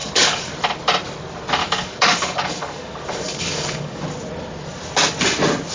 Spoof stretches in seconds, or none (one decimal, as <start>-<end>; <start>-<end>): 0.0-0.5; 1.6-4.0